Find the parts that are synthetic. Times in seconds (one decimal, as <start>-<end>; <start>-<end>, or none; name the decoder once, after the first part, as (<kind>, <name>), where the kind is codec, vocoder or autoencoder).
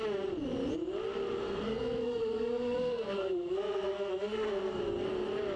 1.4-4.8 (codec, SNAC)